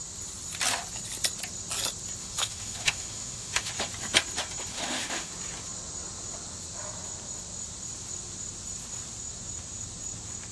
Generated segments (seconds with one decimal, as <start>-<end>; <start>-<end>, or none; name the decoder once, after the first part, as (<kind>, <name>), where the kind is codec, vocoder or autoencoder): 2.2-3.7 (autoencoder, DAC-VAE); 4.7-5.3